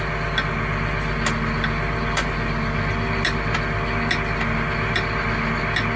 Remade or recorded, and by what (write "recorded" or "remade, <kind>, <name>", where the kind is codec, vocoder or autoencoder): recorded